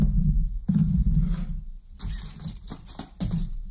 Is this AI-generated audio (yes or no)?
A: no